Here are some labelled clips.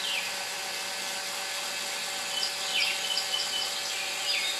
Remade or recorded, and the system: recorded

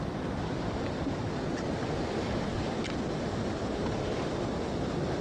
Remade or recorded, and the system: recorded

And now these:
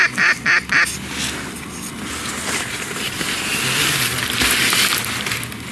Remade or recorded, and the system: recorded